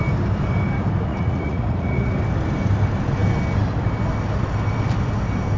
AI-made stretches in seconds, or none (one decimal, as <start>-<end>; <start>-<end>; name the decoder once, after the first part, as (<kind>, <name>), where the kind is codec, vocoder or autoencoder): 1.1-2.1 (vocoder, Vocos)